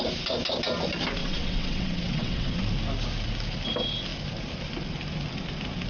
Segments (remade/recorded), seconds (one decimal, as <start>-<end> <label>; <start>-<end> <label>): 0.0-1.2 recorded; 1.2-2.6 remade; 2.6-5.9 recorded

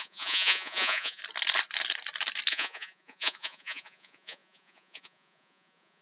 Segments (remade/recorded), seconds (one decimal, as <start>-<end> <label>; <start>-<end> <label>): 0.0-1.2 remade; 1.2-2.5 recorded; 2.5-6.0 remade